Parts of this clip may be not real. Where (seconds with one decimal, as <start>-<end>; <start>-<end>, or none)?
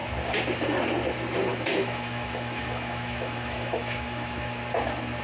1.5-4.6